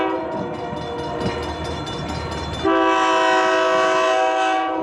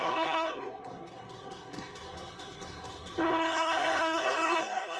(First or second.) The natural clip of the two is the first